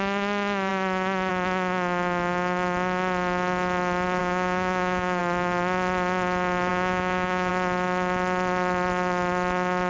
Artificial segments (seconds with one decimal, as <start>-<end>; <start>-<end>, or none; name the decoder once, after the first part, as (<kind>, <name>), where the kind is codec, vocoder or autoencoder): 4.2-5.2 (autoencoder, DAC-VAE); 6.7-7.5